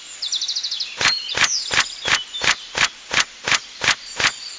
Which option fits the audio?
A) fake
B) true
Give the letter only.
B